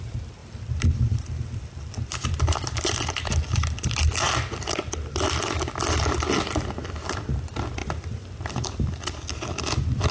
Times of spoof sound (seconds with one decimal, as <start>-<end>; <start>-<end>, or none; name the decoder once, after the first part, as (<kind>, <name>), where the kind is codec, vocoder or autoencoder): 0.4-5.3 (vocoder, BigVGAN v2); 7.8-9.2